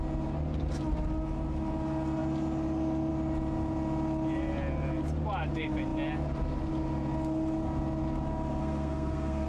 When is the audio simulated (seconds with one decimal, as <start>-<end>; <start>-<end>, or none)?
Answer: 8.6-9.5